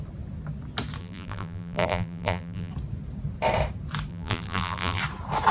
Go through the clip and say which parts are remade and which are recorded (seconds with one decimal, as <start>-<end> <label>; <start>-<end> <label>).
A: 0.0-1.0 recorded; 1.0-2.7 remade; 2.7-4.1 recorded; 4.1-5.0 remade; 5.0-5.5 recorded